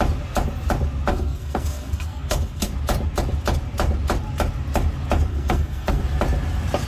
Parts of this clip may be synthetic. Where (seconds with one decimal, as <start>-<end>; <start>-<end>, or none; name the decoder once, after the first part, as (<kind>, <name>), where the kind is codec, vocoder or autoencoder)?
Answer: 1.1-2.7 (codec, SNAC); 5.3-6.0